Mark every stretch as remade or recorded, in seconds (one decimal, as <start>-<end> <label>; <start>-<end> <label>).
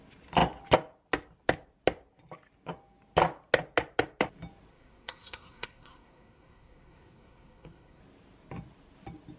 0.0-4.7 recorded; 4.7-8.0 remade; 8.0-9.4 recorded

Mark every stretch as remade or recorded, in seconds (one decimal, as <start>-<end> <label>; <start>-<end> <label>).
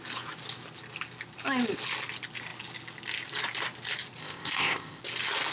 0.0-4.2 recorded; 4.2-5.0 remade; 5.0-5.5 recorded